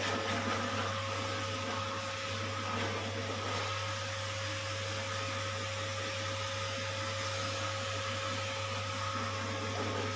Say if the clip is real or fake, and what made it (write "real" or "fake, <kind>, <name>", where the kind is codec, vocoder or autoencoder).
real